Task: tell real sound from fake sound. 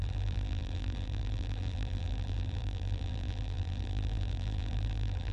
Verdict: fake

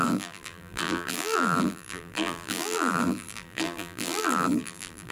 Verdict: fake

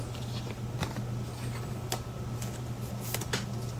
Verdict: real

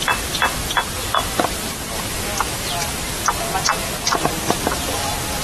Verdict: real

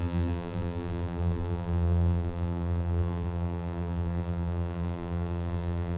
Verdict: fake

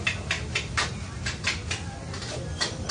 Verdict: real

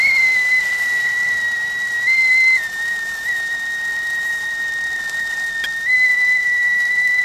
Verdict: real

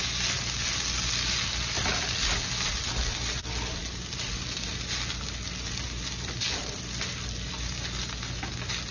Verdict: real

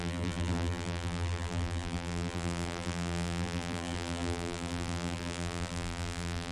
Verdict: fake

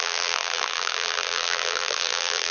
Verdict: fake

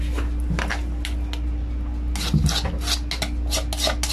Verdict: real